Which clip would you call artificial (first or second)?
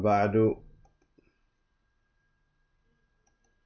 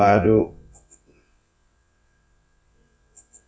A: second